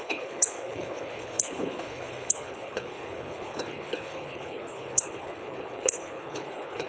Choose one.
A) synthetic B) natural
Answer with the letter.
A